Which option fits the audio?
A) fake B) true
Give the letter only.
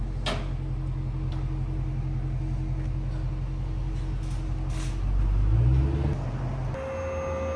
B